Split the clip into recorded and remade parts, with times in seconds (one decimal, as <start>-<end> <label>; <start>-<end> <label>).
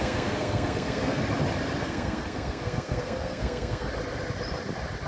0.0-1.2 remade; 1.2-1.8 recorded; 1.8-3.9 remade; 3.9-5.1 recorded